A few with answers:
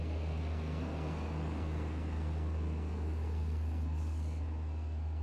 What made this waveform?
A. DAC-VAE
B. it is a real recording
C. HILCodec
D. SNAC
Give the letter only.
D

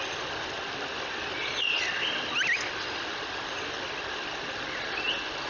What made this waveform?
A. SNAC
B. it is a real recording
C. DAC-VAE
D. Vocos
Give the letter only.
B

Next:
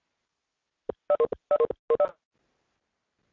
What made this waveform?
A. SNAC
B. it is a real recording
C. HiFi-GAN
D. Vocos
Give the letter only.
B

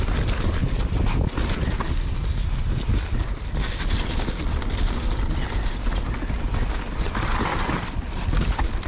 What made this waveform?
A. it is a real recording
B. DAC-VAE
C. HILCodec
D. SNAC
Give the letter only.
A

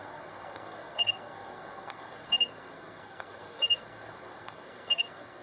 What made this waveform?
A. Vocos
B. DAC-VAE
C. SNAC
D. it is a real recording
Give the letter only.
C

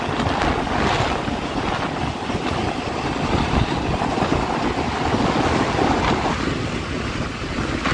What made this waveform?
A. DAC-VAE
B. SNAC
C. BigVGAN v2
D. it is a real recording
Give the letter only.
D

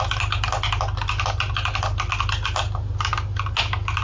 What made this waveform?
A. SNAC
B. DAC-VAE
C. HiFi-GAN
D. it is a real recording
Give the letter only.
D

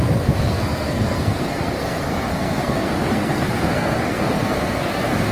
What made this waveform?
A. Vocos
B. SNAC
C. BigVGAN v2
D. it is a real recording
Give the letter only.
B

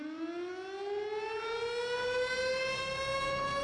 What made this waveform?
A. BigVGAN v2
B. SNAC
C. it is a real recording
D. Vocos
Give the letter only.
C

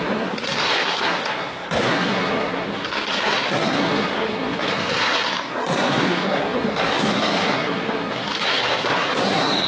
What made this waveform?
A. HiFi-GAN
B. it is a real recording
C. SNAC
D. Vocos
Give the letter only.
C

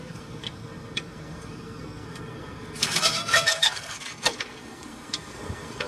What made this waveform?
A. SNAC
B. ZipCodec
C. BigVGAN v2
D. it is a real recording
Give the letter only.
A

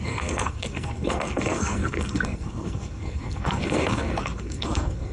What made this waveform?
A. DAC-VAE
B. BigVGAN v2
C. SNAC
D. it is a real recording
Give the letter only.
C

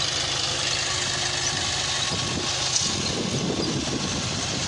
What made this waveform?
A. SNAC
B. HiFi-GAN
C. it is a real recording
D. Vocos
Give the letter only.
C